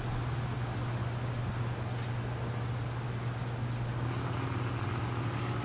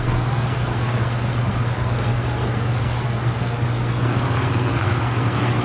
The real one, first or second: first